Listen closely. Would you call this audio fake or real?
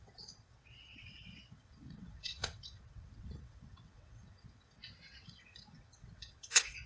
fake